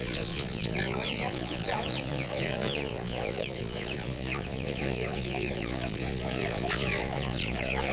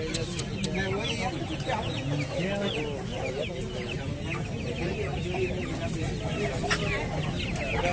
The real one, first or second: second